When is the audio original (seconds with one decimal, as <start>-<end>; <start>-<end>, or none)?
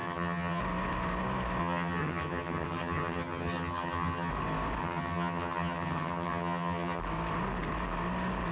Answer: 0.6-1.6; 4.3-4.8; 7.0-8.5